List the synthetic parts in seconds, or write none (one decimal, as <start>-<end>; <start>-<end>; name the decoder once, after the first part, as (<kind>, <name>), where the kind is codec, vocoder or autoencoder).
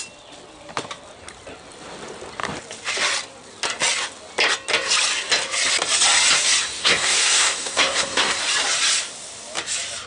6.8-8.4 (codec, SNAC)